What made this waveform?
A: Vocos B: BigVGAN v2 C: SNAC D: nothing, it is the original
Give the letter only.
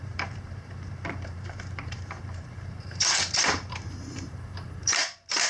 B